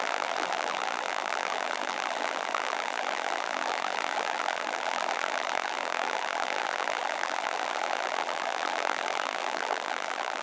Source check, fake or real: fake